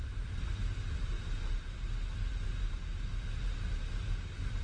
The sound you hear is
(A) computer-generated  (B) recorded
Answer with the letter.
B